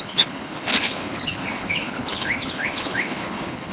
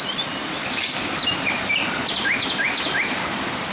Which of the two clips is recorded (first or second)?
second